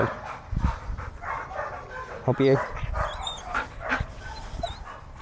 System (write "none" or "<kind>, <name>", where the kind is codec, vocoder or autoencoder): none